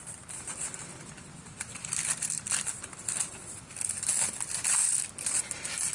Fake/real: fake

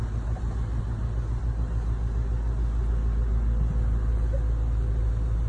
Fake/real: real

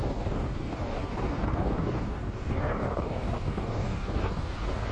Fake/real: fake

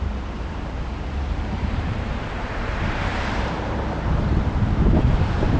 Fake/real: fake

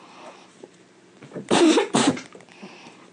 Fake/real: fake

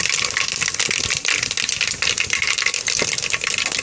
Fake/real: real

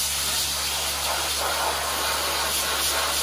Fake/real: real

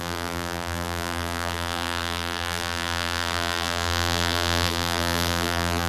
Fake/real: fake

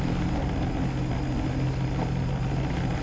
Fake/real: real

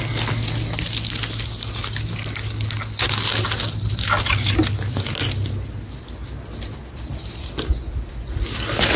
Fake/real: real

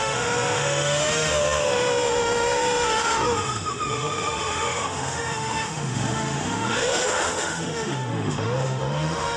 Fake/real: fake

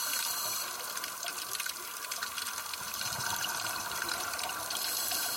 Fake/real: real